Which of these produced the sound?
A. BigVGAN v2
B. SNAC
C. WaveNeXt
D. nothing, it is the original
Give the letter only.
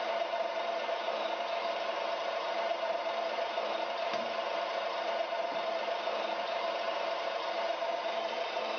A